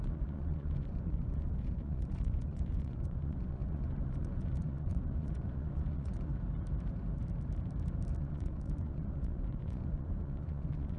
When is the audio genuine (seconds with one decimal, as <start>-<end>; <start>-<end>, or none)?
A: 6.3-8.2